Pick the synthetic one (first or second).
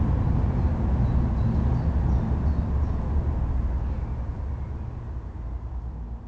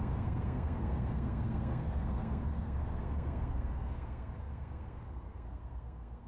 second